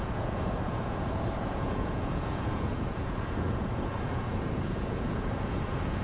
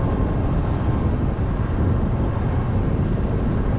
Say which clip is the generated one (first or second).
first